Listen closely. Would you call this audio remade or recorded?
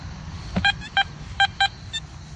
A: recorded